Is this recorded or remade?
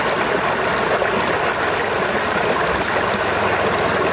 recorded